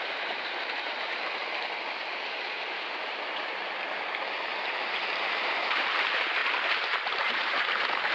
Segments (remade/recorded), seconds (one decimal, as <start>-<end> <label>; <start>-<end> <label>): 0.0-1.4 remade; 1.4-2.1 recorded; 2.1-6.4 remade; 6.4-7.2 recorded; 7.2-8.1 remade